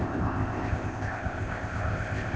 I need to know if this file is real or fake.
fake